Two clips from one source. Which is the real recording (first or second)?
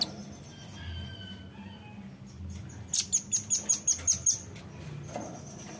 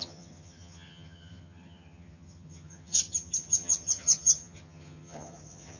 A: first